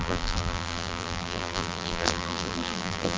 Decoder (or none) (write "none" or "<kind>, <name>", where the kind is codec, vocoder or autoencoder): vocoder, BigVGAN v2